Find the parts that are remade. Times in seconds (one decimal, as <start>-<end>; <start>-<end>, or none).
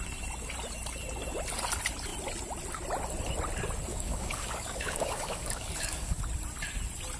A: 3.9-6.2